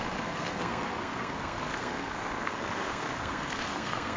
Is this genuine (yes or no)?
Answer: no